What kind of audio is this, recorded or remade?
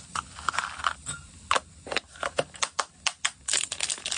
recorded